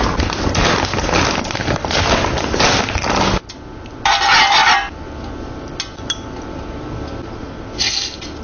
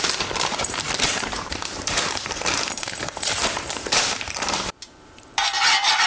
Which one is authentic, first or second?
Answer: first